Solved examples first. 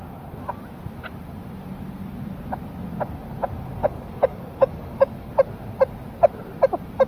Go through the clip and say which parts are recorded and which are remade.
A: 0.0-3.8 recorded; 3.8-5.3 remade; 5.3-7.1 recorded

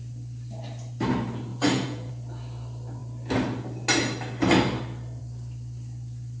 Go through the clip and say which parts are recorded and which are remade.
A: 0.0-1.5 recorded; 1.5-2.1 remade; 2.1-6.4 recorded